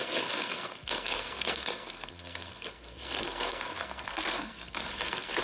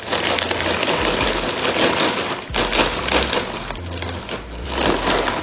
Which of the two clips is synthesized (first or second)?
first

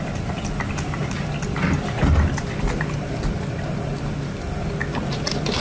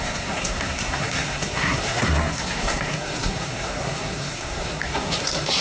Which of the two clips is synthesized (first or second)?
second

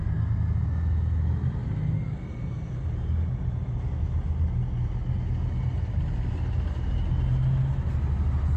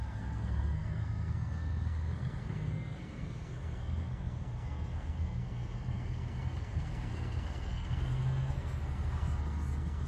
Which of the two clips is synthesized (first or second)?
second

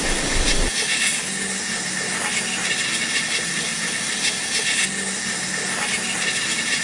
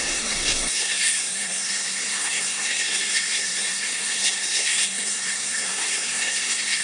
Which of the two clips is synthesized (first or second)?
second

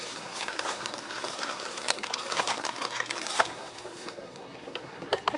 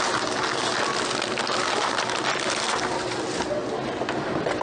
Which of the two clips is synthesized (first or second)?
first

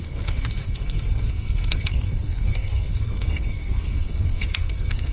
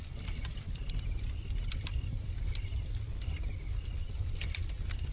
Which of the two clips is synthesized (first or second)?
first